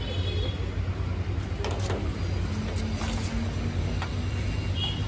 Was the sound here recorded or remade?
recorded